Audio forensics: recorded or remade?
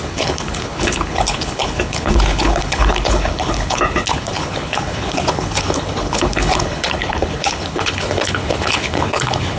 remade